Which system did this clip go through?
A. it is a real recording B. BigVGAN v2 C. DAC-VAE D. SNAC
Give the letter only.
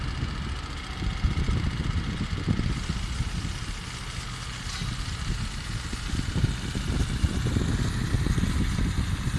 A